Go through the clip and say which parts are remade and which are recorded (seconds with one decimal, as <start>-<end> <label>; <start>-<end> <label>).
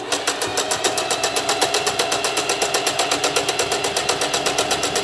0.0-5.0 recorded